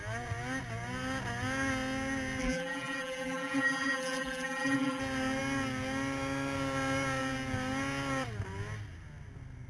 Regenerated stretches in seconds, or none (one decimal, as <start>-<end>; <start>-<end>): 2.4-5.0